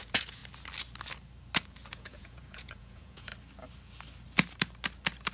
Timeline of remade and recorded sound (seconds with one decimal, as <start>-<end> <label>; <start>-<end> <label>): 0.0-0.4 remade; 0.4-1.9 recorded; 1.9-3.3 remade; 3.3-5.3 recorded